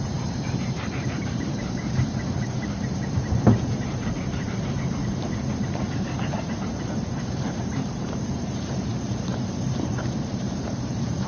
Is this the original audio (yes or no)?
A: no